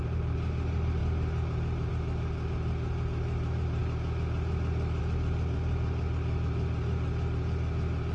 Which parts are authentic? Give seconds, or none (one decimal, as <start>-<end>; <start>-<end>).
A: 0.0-8.1